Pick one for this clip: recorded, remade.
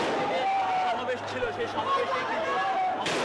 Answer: recorded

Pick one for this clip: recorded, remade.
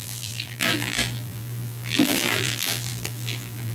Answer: remade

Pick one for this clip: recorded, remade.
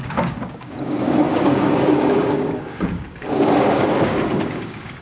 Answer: remade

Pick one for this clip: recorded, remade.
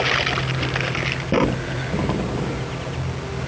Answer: recorded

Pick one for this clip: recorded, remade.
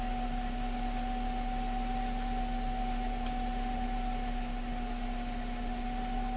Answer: recorded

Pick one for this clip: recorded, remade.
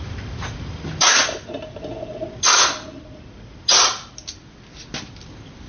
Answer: recorded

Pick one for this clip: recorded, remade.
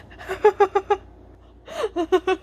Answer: recorded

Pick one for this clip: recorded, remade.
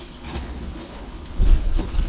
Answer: remade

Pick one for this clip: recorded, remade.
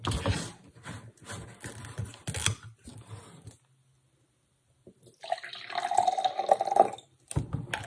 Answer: recorded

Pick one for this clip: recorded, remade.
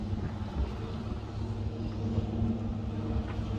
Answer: recorded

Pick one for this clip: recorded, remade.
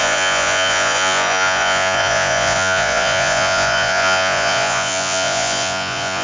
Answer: remade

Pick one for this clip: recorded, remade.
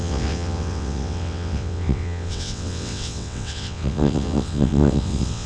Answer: remade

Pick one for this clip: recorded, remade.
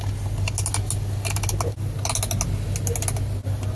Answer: recorded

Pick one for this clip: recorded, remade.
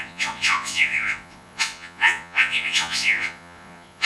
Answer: remade